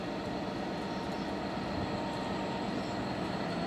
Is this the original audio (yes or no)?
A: yes